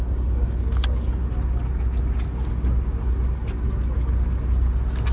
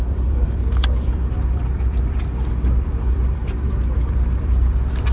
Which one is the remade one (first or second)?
second